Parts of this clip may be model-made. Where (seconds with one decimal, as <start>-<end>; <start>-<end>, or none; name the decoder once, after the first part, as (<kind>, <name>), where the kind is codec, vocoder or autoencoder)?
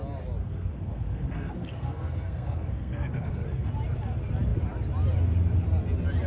0.4-3.7 (codec, SNAC)